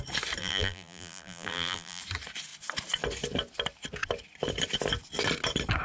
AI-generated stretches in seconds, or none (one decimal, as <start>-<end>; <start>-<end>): 0.4-2.0